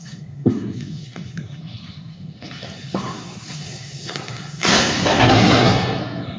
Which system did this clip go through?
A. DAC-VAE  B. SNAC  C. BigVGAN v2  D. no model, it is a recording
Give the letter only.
B